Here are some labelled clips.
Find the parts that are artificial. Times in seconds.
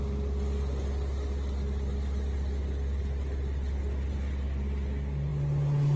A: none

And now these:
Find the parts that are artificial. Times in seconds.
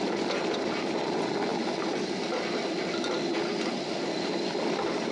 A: none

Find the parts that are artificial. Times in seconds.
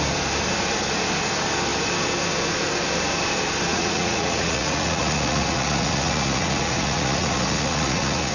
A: 3.7-8.3 (vocoder, Vocos)